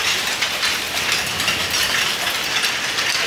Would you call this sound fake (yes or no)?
no